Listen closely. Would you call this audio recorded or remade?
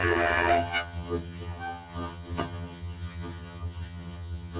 remade